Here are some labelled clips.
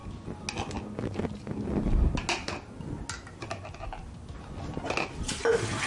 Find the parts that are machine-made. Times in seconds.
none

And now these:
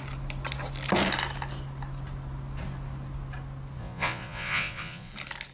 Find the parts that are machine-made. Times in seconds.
3.8-5.1 (vocoder, Vocos)

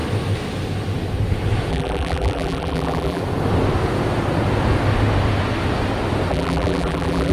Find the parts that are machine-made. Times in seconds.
1.7-3.2 (vocoder, BigVGAN v2); 6.3-7.3

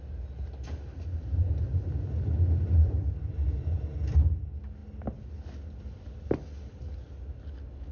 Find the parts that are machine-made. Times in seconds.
none